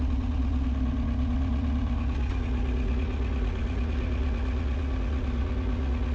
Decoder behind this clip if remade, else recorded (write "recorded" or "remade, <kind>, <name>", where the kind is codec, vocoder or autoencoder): remade, vocoder, Vocos